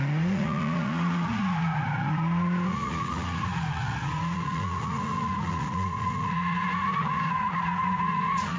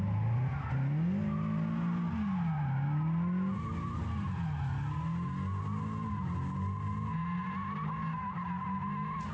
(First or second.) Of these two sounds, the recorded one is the second